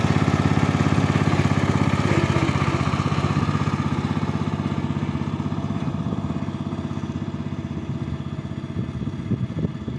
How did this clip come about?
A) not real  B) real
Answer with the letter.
B